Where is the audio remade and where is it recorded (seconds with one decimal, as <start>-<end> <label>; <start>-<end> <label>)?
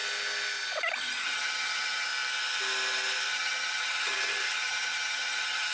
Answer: 0.0-1.0 recorded; 1.0-2.1 remade; 2.1-3.3 recorded; 3.3-5.7 remade